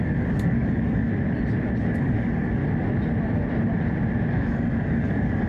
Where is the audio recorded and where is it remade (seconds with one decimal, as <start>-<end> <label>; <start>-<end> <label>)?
0.0-1.1 remade; 1.1-1.8 recorded; 1.8-2.6 remade; 2.6-4.3 recorded; 4.3-5.5 remade